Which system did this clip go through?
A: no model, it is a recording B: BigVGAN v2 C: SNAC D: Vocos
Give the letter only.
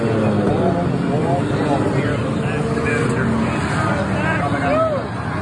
A